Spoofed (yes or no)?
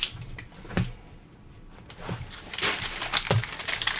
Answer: yes